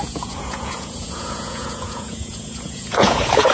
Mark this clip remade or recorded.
remade